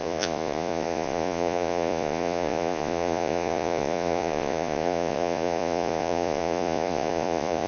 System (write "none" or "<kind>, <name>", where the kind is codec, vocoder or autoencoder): vocoder, Vocos